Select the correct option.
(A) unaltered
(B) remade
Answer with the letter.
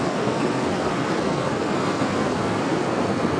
B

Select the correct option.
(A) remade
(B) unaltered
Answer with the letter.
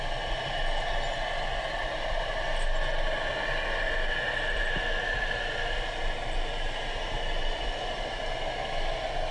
B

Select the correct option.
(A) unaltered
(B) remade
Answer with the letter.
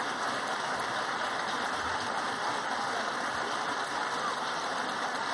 A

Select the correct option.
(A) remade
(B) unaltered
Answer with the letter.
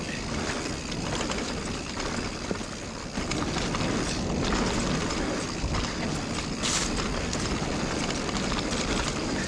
B